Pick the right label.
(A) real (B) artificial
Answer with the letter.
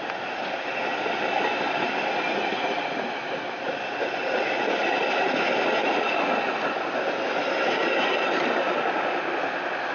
A